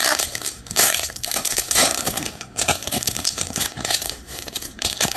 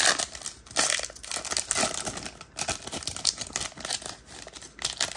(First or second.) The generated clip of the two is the first